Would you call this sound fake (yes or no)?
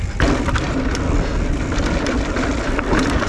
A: no